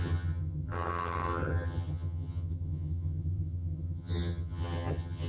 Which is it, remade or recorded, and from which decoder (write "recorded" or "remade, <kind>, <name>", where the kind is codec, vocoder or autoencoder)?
remade, vocoder, HiFi-GAN